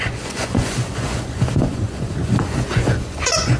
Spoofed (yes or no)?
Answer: yes